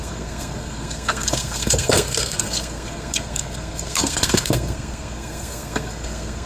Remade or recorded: remade